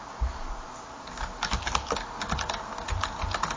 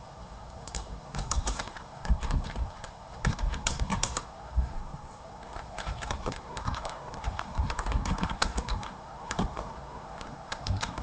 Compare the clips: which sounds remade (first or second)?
second